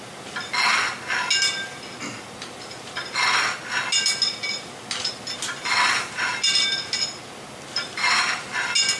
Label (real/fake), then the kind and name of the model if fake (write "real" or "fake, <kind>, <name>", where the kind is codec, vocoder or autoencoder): real